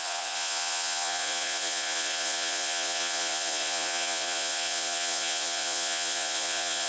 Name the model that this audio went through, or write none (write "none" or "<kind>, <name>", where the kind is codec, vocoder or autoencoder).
vocoder, Vocos